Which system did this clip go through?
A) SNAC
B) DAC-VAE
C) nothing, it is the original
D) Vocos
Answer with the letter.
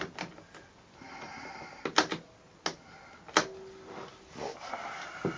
C